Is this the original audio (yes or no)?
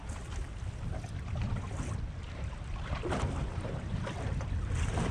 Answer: yes